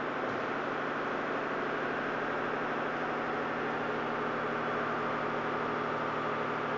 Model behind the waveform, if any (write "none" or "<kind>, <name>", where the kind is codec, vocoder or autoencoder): none